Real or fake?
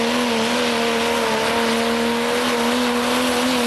real